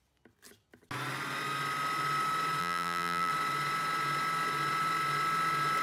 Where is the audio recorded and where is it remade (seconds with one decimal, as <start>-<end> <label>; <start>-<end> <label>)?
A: 0.0-2.6 recorded; 2.6-3.3 remade; 3.3-5.8 recorded